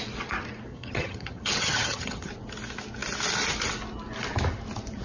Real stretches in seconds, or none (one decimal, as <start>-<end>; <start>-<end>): 0.0-0.7; 2.3-5.0

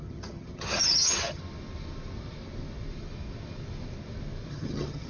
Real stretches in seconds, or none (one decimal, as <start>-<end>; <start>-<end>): 1.4-4.5

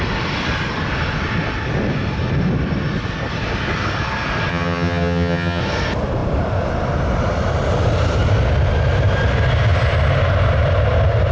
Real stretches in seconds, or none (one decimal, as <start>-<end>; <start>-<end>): 0.0-4.5; 5.6-11.3